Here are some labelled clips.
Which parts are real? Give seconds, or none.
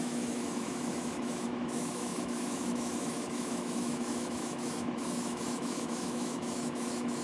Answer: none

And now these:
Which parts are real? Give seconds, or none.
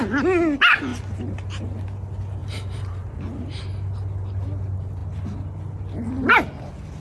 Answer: 0.0-2.4; 3.6-7.0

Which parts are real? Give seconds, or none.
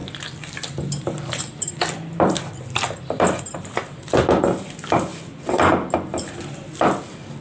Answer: 3.4-7.4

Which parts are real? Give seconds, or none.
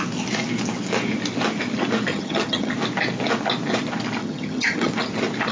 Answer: 0.0-2.1; 2.7-4.2; 4.9-5.5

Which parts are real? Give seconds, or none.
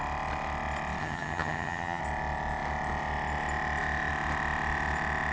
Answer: 0.0-1.0; 2.0-5.3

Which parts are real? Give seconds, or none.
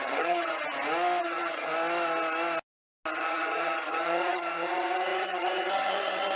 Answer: 0.6-1.2; 1.7-3.1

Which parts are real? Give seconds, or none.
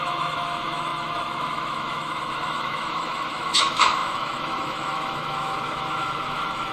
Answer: none